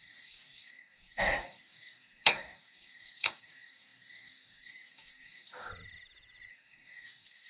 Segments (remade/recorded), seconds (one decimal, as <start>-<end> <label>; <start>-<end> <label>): 0.0-5.7 remade; 5.7-6.5 recorded; 6.5-7.5 remade